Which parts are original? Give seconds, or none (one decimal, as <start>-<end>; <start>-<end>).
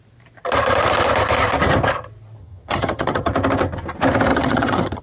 0.0-2.4; 3.3-4.3